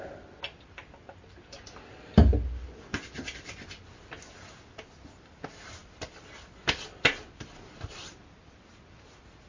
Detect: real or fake real